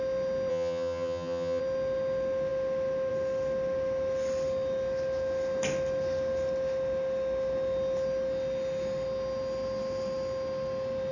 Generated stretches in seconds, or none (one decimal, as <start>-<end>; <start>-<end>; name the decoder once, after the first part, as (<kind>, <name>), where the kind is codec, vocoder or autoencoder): 0.5-1.6 (vocoder, HiFi-GAN)